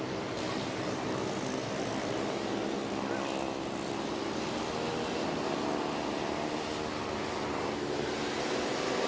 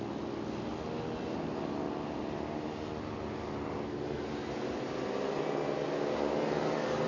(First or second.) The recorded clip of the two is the second